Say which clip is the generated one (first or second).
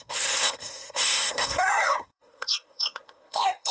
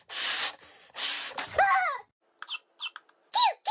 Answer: first